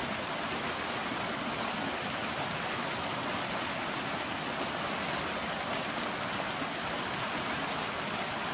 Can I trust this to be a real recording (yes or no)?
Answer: yes